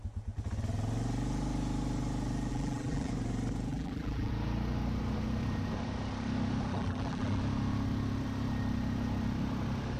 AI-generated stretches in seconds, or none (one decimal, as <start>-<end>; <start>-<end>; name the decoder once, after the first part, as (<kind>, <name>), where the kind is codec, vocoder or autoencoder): 2.5-3.1 (vocoder, BigVGAN v2); 3.7-4.3; 6.7-7.4